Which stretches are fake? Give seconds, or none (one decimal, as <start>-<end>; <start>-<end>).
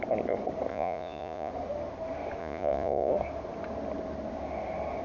0.7-1.5; 2.4-3.1